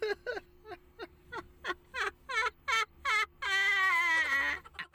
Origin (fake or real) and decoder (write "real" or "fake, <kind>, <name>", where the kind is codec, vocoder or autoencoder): real